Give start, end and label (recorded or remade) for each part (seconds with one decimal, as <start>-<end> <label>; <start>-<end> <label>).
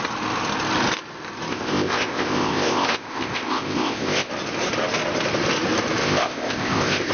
0.0-1.5 recorded; 1.5-4.3 remade; 4.3-6.0 recorded; 6.0-7.1 remade